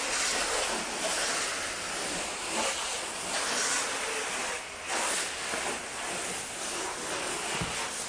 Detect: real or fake real